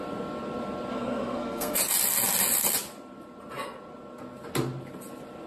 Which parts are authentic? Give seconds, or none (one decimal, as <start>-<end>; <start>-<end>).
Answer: 0.0-0.9; 1.8-5.5